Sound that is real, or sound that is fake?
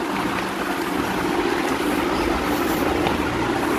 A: real